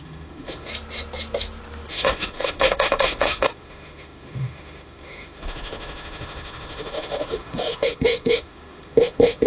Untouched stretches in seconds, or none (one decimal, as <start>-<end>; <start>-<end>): 0.7-1.9